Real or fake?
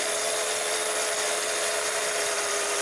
fake